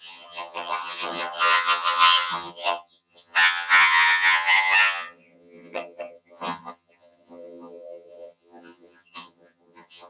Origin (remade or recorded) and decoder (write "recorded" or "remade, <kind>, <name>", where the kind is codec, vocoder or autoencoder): remade, vocoder, HiFi-GAN